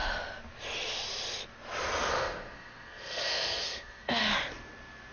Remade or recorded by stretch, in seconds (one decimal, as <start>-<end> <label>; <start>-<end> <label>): 0.0-2.1 recorded; 2.1-4.2 remade; 4.2-5.1 recorded